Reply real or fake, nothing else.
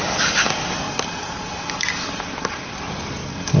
real